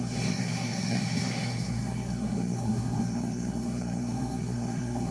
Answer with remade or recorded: remade